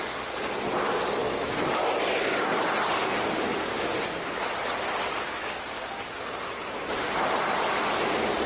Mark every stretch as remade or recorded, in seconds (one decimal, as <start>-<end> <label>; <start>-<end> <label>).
0.0-1.2 recorded; 1.2-1.8 remade; 1.8-8.5 recorded